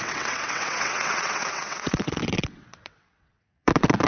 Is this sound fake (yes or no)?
yes